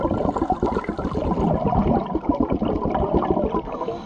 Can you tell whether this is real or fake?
real